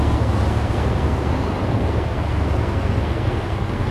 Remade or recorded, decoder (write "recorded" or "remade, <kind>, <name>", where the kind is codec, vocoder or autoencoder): remade, codec, SNAC